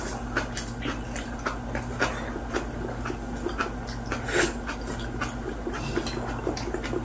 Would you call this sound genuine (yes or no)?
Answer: yes